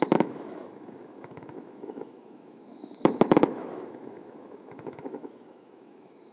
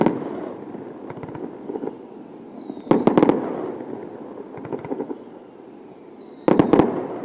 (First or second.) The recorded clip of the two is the second